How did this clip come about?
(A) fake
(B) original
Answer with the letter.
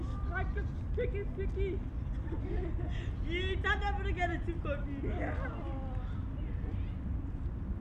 B